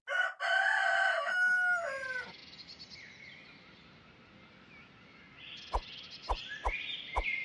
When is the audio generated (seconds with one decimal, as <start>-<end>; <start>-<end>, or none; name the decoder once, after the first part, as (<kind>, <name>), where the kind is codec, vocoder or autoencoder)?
none